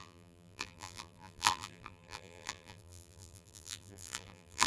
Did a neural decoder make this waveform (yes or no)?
yes